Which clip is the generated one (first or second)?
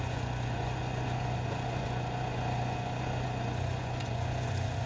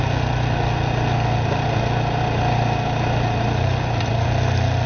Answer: first